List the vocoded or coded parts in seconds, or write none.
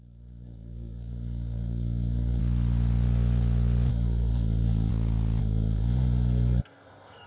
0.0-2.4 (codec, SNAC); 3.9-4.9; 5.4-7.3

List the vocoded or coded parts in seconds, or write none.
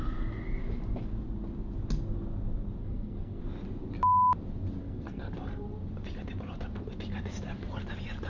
2.8-3.4 (codec, SNAC); 4.8-5.3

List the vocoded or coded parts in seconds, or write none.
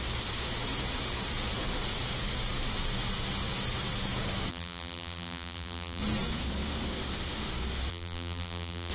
4.5-6.0 (vocoder, BigVGAN v2); 7.9-8.9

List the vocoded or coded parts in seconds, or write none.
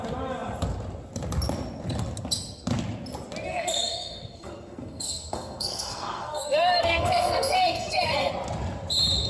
3.5-8.3 (codec, SNAC)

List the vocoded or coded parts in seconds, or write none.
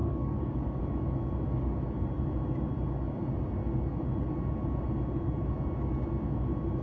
0.0-0.8 (codec, DAC)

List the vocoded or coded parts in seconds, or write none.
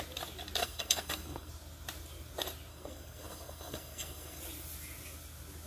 0.6-1.5 (codec, SNAC); 2.7-4.4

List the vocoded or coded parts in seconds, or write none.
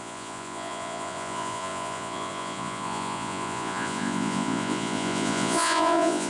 0.0-6.3 (vocoder, Vocos)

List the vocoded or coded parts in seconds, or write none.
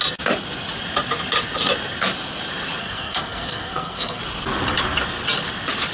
2.8-4.2 (codec, SNAC)